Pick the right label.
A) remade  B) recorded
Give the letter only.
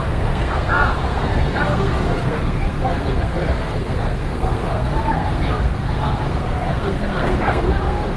A